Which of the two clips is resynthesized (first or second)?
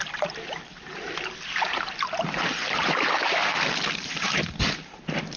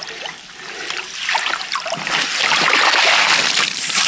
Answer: first